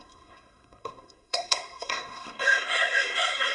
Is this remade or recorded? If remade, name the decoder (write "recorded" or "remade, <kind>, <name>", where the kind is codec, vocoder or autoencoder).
remade, codec, SNAC